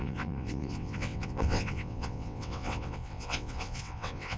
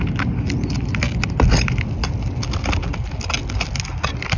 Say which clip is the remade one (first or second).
first